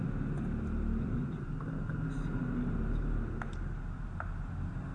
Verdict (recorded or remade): recorded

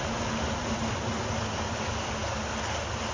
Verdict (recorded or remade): recorded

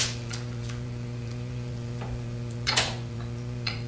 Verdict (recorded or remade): remade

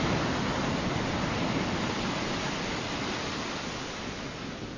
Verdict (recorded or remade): recorded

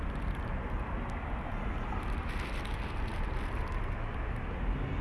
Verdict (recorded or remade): recorded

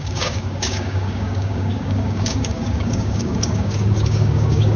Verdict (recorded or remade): remade